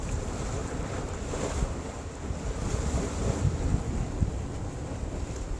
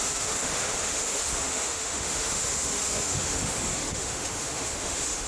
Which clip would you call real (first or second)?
first